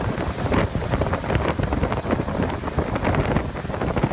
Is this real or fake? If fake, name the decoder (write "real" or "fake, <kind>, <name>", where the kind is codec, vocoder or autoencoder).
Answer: real